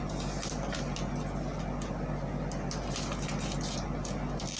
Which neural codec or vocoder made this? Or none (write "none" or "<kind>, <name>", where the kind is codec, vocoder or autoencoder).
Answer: none